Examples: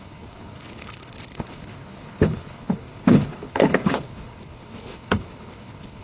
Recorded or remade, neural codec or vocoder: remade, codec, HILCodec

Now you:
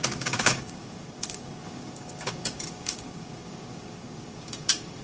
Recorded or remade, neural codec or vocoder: remade, codec, DAC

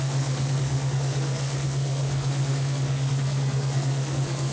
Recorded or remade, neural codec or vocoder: remade, codec, SNAC